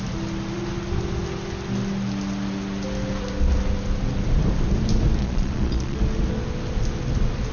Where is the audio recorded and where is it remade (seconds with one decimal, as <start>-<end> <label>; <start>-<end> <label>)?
0.0-5.2 recorded; 5.2-6.0 remade; 6.0-7.5 recorded